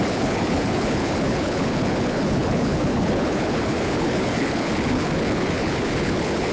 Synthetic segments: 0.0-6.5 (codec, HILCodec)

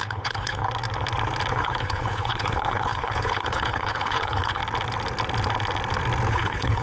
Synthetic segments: 0.0-0.6 (codec, HILCodec); 1.5-4.6; 6.3-6.8

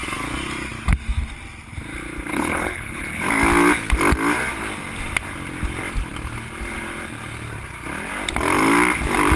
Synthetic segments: 2.3-3.3 (codec, HILCodec)

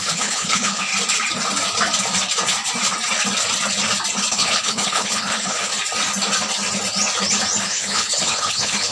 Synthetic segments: 0.0-0.9 (codec, HILCodec); 4.3-5.7; 7.6-8.9

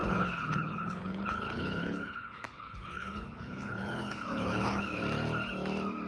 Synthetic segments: 0.0-5.0 (codec, HILCodec)

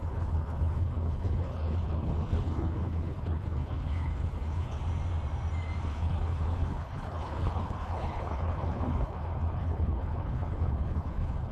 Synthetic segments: 0.0-4.8 (codec, HILCodec); 5.9-11.5

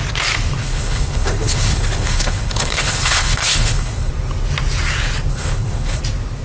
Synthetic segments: 0.6-4.1 (codec, HILCodec); 5.3-6.0

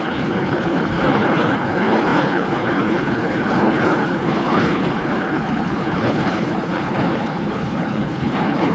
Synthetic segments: 0.0-8.7 (codec, HILCodec)